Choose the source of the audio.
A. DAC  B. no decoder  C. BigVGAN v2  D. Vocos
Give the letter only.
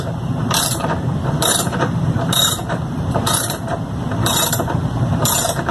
C